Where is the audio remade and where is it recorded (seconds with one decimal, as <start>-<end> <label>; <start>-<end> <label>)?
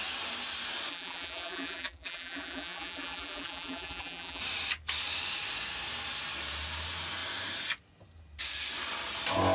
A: 0.0-0.9 recorded; 0.9-4.4 remade; 4.4-9.5 recorded